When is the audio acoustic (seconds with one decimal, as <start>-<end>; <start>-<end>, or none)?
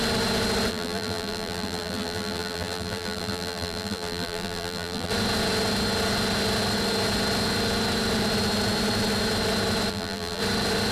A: 0.0-0.7; 5.1-9.9; 10.4-10.9